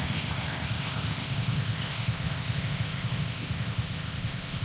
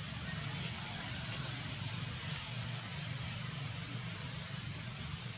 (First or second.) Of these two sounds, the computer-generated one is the first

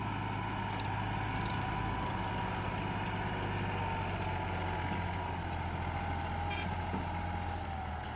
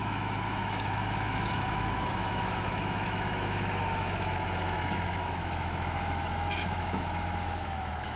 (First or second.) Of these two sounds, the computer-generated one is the second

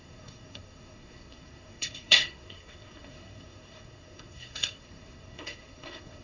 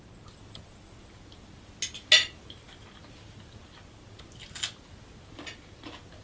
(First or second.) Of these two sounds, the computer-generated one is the first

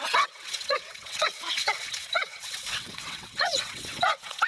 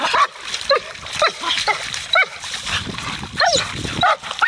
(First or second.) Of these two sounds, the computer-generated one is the first